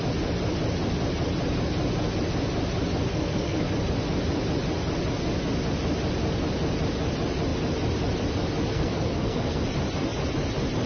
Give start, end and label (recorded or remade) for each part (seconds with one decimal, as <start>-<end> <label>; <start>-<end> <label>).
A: 0.0-3.1 recorded; 3.1-3.7 remade; 3.7-8.7 recorded; 8.7-9.6 remade; 9.6-10.9 recorded

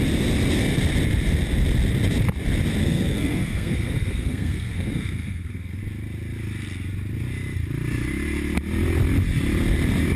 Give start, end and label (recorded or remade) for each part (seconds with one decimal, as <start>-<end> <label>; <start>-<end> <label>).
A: 0.0-2.8 recorded; 2.8-5.8 remade; 5.8-10.2 recorded

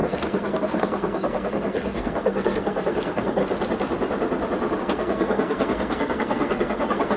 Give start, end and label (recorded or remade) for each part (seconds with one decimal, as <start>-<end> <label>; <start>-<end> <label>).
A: 0.0-3.4 remade; 3.4-4.8 recorded; 4.8-7.2 remade

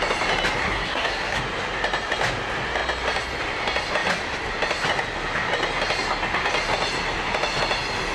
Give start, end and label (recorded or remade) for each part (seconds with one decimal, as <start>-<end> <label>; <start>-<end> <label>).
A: 0.0-0.6 recorded; 0.6-1.4 remade; 1.4-8.1 recorded

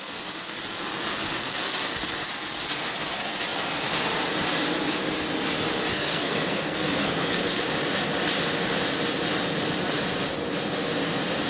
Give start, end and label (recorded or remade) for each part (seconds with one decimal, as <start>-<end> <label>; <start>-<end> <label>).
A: 0.0-5.9 recorded; 5.9-7.6 remade; 7.6-11.5 recorded

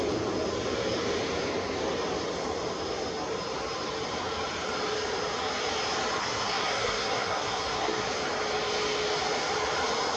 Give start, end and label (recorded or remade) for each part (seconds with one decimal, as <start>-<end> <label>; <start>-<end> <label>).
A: 0.0-6.2 recorded; 6.2-8.1 remade; 8.1-10.2 recorded

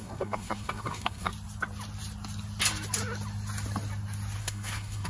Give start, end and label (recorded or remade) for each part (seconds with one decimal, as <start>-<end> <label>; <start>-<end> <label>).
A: 0.0-1.3 remade; 1.3-4.4 recorded; 4.4-5.1 remade

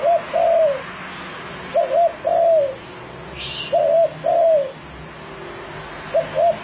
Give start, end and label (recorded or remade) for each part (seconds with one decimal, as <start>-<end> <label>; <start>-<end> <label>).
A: 0.0-6.6 recorded